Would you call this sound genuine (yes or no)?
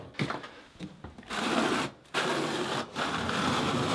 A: yes